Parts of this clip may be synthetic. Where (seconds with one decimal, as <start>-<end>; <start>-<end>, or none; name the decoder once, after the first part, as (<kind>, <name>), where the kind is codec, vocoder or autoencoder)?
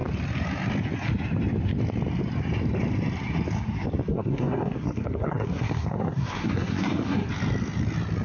4.1-7.3 (codec, SNAC)